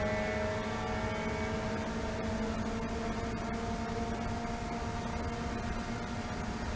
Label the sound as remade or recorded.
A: recorded